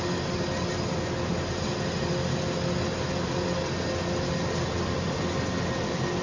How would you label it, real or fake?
real